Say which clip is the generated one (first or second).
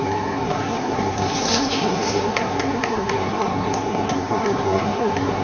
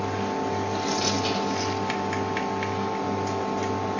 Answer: first